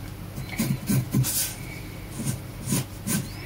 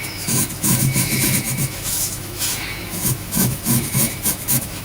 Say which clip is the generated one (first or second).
second